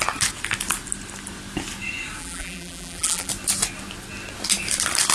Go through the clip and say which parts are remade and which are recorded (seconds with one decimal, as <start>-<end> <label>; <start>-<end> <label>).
0.0-2.2 recorded; 2.2-3.3 remade; 3.3-5.1 recorded